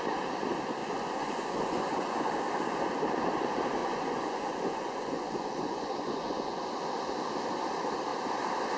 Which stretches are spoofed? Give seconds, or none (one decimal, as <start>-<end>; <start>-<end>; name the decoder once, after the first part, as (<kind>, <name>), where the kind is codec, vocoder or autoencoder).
0.8-2.3 (vocoder, Vocos); 3.8-6.6